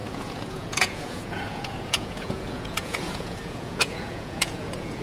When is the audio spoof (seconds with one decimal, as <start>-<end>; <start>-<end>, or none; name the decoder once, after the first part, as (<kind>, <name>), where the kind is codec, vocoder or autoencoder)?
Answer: 0.0-5.0 (vocoder, Vocos)